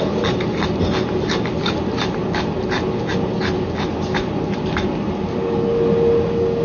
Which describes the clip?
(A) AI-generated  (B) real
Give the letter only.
B